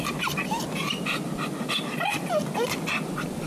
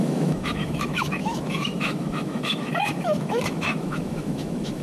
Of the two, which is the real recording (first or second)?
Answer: first